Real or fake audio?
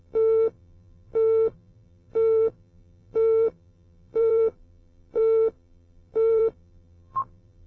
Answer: fake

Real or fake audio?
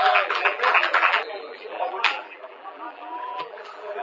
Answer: fake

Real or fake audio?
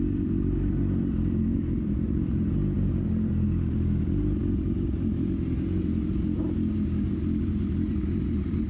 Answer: fake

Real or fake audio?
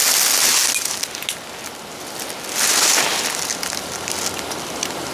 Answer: real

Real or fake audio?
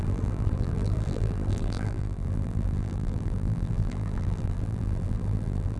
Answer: fake